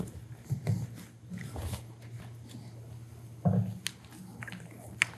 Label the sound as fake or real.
real